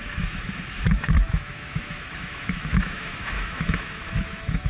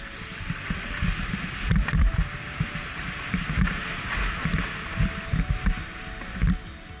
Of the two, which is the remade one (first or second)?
first